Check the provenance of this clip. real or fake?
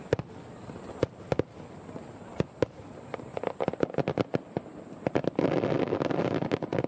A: real